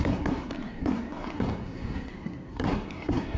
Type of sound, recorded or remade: remade